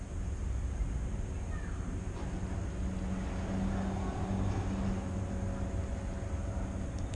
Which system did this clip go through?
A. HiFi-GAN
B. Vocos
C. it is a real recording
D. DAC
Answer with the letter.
C